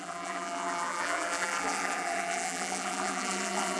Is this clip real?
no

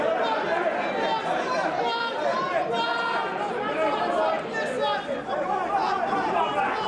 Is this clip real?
yes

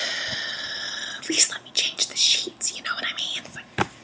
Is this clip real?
no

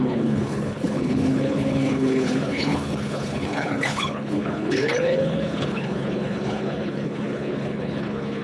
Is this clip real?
no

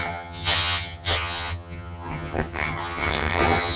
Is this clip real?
no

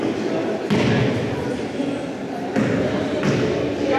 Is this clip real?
yes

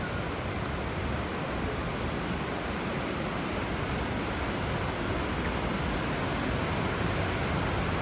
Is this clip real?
yes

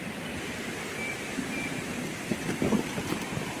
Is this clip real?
yes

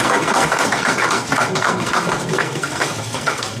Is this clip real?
no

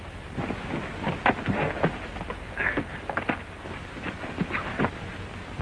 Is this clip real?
yes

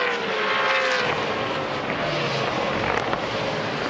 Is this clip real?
yes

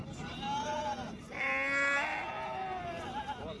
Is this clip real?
yes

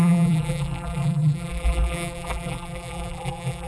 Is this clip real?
no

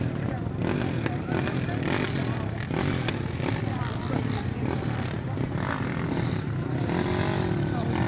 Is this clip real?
yes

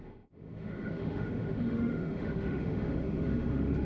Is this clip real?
no